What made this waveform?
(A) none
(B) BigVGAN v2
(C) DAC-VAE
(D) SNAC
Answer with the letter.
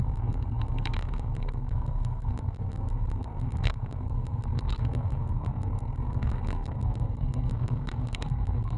D